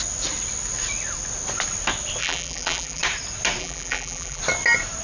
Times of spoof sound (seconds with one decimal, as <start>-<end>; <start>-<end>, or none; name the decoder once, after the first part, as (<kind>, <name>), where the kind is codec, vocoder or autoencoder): 2.2-3.0 (vocoder, BigVGAN v2); 3.6-4.4